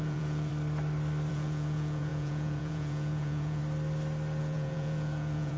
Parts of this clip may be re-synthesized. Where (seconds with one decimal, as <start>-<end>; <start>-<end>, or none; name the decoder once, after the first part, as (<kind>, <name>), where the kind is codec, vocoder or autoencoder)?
0.0-0.5 (vocoder, Vocos); 1.3-3.6; 4.4-5.6